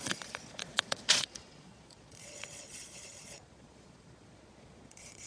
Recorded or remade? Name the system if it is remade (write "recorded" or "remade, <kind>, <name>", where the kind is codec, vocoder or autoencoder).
remade, vocoder, Vocos